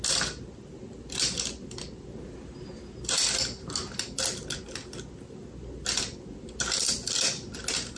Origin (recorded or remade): recorded